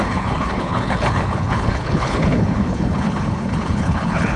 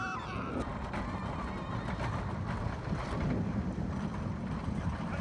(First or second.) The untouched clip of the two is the second